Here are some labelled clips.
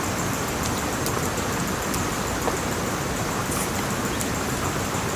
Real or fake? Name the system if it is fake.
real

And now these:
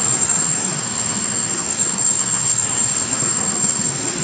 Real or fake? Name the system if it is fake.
fake, codec, SNAC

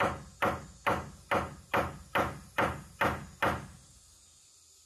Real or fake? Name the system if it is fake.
real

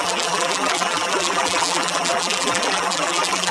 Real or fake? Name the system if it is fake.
fake, vocoder, BigVGAN v2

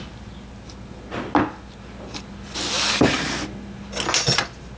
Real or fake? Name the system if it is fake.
real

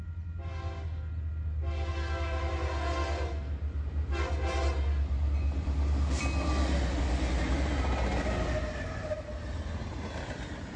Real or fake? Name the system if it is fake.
real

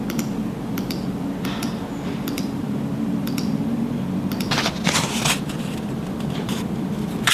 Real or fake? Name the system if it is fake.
fake, vocoder, BigVGAN v2